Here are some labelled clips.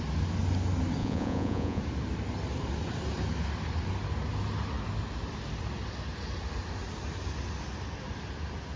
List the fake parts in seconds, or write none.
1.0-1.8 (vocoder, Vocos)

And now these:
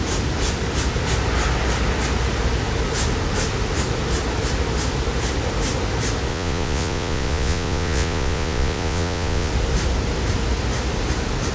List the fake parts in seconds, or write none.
6.3-9.5 (vocoder, Vocos)